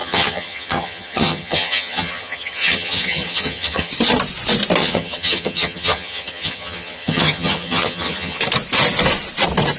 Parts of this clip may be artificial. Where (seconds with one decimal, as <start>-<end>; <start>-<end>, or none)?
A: 0.0-3.9; 4.8-8.4